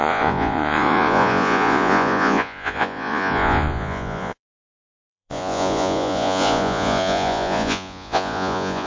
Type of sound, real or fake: fake